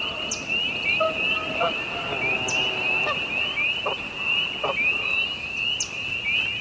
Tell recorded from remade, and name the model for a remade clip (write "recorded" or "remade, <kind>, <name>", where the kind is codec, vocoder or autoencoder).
recorded